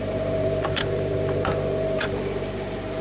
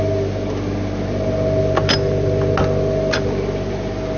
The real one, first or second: second